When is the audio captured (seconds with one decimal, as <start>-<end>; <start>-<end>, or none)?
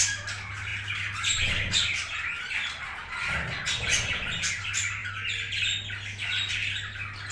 0.0-7.3